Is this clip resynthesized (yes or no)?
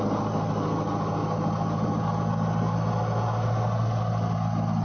no